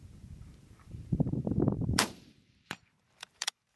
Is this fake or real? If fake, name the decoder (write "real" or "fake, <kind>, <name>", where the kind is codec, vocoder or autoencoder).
fake, vocoder, BigVGAN v2